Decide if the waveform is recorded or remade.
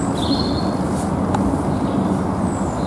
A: recorded